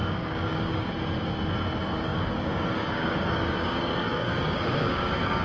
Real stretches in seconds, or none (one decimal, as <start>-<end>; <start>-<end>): 0.9-2.1